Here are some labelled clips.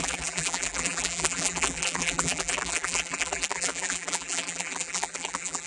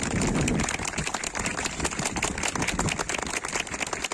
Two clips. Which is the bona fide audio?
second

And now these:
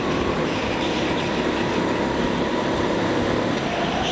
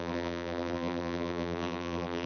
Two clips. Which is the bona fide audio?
first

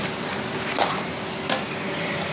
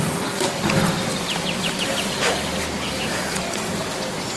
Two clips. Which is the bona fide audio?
first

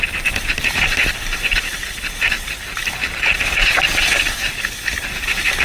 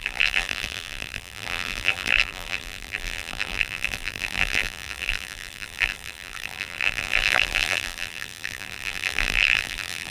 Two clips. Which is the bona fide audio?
first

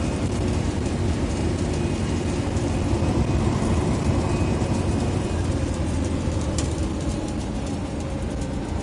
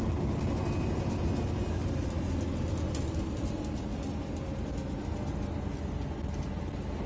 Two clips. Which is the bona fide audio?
second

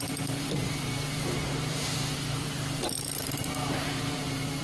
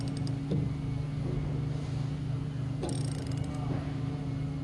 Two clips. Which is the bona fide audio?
second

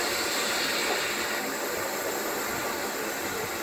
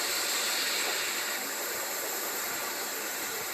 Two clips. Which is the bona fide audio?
first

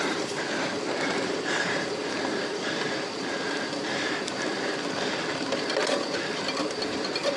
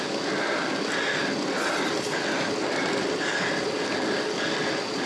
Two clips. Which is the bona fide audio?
second